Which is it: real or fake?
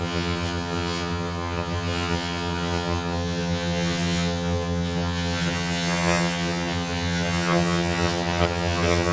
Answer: fake